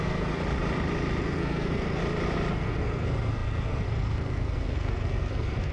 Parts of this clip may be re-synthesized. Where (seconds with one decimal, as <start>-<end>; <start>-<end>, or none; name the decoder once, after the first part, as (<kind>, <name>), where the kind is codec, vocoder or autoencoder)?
0.0-0.4 (codec, SNAC); 1.2-2.0; 2.5-5.7